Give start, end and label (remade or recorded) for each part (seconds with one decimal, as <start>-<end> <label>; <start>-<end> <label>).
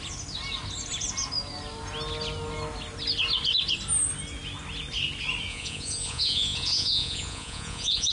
0.0-5.5 recorded; 5.5-8.1 remade